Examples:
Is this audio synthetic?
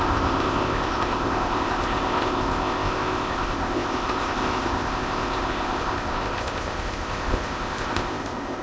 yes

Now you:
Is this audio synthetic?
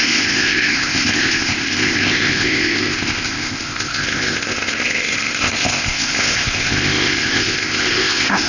yes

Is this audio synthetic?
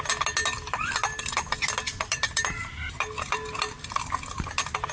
no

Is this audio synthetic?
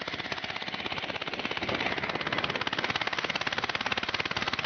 no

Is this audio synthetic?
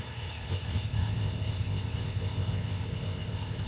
yes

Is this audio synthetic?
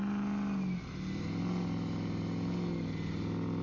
no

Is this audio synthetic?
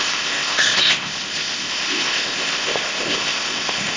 yes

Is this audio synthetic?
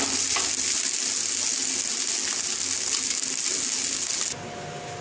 no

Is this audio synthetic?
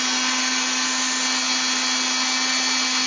no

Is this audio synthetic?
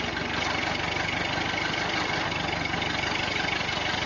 no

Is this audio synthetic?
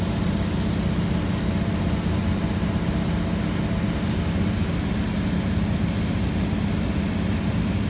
no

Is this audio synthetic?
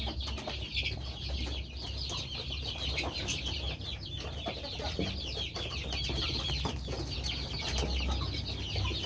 no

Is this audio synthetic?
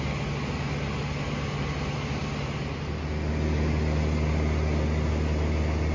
no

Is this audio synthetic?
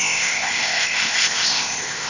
yes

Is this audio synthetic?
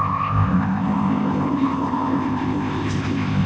yes